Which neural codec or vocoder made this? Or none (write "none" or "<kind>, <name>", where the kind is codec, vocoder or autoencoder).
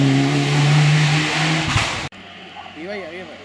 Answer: none